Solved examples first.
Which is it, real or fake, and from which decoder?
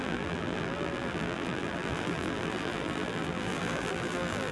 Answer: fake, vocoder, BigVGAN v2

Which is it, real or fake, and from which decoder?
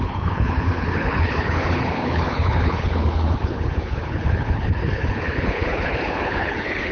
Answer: fake, codec, HILCodec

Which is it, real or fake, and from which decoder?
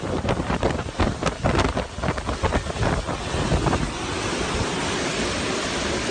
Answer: real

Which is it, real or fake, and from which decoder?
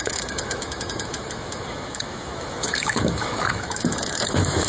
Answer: fake, autoencoder, DAC-VAE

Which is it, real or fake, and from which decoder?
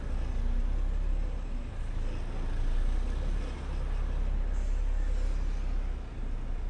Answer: real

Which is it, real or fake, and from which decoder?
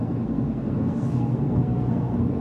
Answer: fake, codec, SNAC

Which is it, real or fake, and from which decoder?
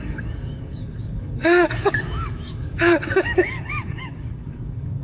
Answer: fake, codec, DAC